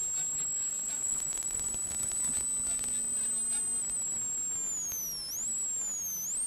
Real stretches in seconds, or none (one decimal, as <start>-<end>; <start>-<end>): 0.0-0.7; 2.4-6.5